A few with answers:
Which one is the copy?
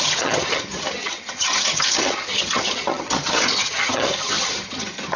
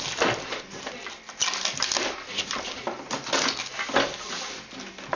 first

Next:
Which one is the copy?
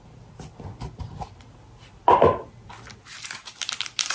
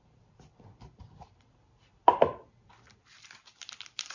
second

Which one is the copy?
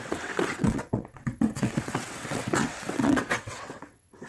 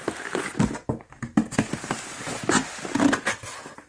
first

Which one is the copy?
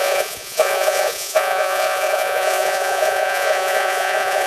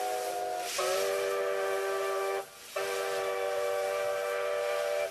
first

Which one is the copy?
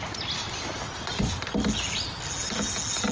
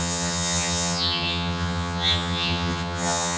second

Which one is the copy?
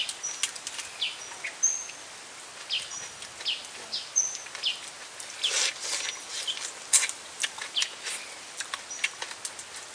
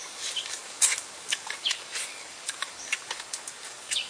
second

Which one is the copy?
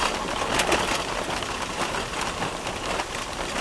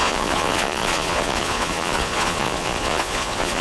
second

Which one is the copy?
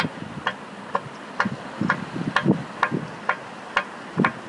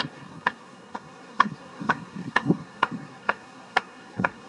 second